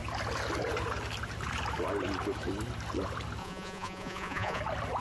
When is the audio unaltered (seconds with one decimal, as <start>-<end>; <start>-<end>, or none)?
0.0-3.4; 4.6-5.0

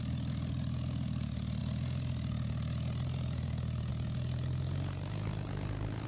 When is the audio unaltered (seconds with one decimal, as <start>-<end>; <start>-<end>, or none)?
0.0-6.1

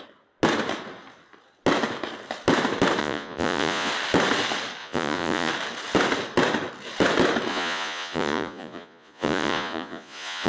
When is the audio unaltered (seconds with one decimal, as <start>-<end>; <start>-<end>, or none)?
0.0-3.0; 3.9-4.8; 5.5-7.5